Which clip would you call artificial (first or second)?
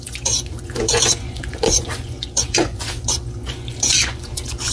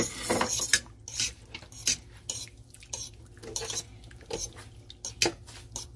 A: first